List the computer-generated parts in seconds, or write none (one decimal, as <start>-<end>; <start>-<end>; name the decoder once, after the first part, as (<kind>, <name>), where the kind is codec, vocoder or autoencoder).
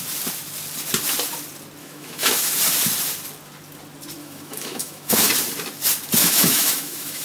1.8-2.6 (autoencoder, DAC-VAE); 4.2-5.3; 6.2-7.2